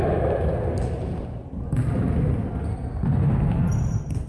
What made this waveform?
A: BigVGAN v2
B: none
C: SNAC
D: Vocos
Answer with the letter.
A